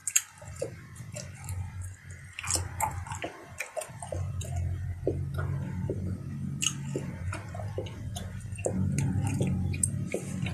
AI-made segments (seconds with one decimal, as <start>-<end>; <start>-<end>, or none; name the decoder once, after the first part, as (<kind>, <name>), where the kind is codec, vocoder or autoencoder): none